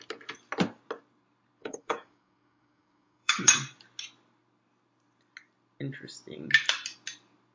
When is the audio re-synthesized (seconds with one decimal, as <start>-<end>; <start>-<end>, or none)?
1.6-3.5